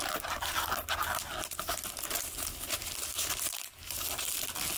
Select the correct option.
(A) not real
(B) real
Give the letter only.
B